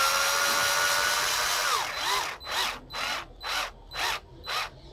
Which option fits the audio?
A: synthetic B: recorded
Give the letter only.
B